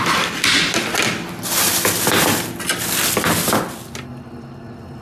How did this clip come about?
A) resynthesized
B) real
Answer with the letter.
B